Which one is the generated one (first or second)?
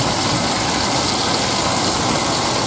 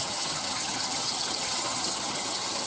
second